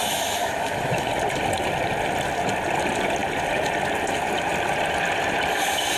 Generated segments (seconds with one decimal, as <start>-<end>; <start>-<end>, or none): 0.0-1.1